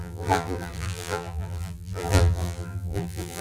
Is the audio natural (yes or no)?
no